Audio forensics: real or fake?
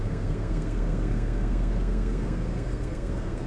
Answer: fake